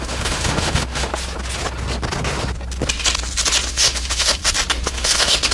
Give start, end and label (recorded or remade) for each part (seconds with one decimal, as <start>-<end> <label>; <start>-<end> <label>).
0.0-1.1 remade; 1.1-3.7 recorded; 3.7-4.4 remade; 4.4-4.9 recorded; 4.9-5.5 remade